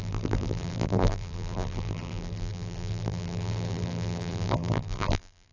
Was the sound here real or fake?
fake